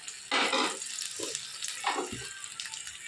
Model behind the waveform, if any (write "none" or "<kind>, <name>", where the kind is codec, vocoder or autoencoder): none